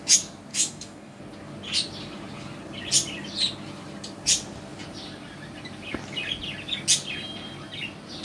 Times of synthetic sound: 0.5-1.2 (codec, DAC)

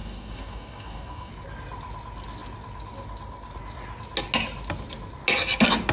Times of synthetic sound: 0.0-1.3 (codec, DAC)

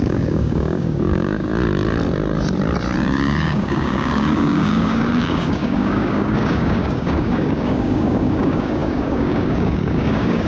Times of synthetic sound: 0.0-1.5 (codec, DAC); 3.0-10.5

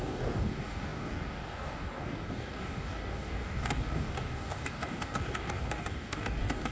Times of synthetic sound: 0.0-6.7 (codec, DAC)

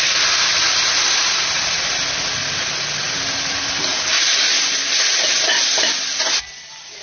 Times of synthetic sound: none

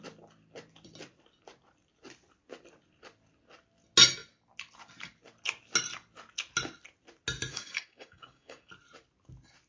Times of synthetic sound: 7.5-8.7 (codec, DAC)

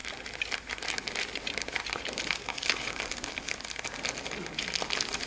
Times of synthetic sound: 2.5-3.0 (codec, DAC)

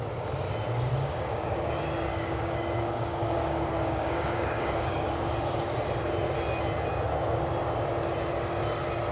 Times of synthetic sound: 0.9-1.7 (codec, DAC); 2.1-5.2